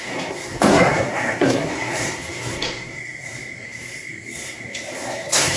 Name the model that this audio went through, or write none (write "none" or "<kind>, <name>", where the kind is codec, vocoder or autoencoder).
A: codec, SNAC